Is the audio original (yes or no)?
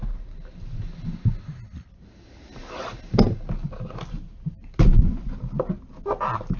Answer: yes